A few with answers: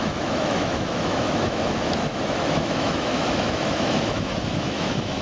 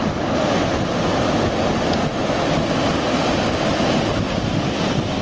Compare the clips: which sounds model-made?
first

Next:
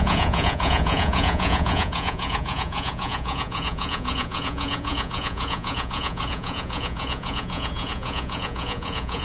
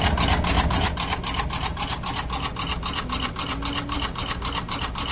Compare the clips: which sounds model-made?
first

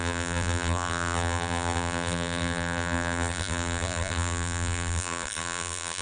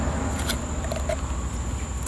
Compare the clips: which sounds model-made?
first